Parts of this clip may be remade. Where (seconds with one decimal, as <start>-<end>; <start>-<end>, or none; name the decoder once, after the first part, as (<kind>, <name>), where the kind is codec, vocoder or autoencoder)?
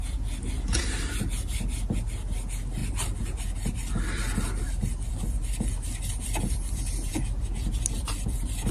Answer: none